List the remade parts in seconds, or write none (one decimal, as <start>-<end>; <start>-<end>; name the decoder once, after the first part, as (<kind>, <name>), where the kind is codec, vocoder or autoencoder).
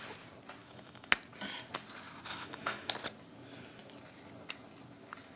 0.6-1.1 (autoencoder, DAC-VAE); 2.3-2.9